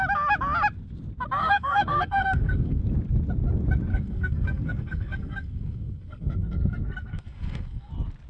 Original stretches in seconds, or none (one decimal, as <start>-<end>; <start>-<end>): 0.0-1.4; 2.8-3.9; 7.9-8.3